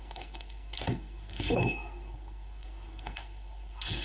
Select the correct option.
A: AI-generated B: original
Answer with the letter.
A